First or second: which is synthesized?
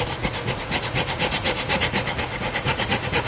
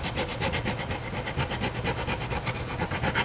first